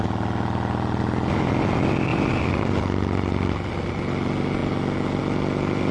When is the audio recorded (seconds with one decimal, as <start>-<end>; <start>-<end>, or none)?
0.0-5.9